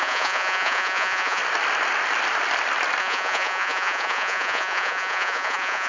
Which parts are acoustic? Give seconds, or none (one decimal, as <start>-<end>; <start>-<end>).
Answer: 1.4-3.0